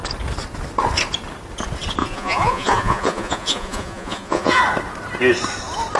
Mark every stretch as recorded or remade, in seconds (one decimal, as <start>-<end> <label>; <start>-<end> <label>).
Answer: 0.0-2.0 recorded; 2.0-4.6 remade; 4.6-6.0 recorded